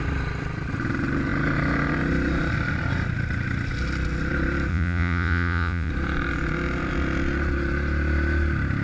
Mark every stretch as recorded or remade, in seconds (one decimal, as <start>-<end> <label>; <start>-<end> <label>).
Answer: 0.0-4.7 recorded; 4.7-5.9 remade; 5.9-8.8 recorded